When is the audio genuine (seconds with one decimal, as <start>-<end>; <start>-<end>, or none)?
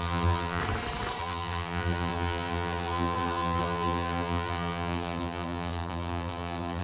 0.6-1.2